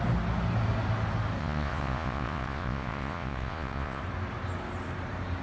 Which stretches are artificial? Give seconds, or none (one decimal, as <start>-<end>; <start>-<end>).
1.4-4.0